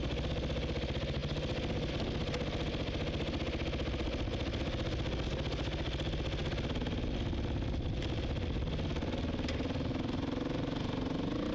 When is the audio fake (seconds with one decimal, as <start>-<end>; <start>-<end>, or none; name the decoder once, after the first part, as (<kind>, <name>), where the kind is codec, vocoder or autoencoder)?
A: none